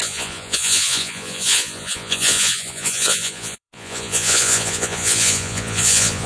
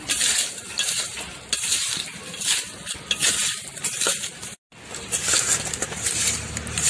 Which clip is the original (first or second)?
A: second